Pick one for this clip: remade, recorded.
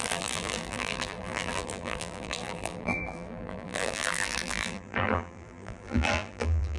remade